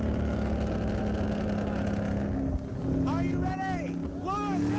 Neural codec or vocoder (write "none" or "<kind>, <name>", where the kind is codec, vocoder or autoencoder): none